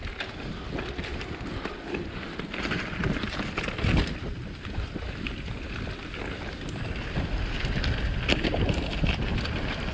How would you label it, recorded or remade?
recorded